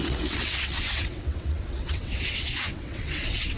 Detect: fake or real fake